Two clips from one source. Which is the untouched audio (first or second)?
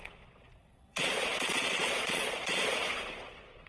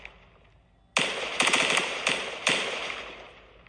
second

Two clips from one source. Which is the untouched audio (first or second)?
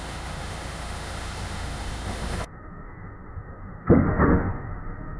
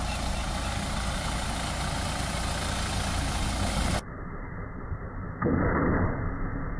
second